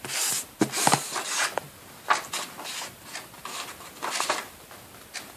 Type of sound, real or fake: real